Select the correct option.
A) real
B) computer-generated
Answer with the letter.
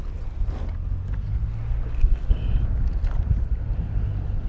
A